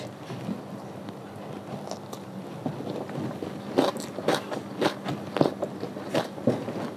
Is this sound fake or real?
real